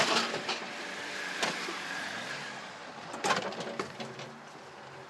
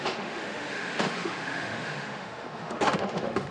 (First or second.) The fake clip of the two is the second